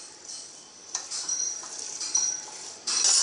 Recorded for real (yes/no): no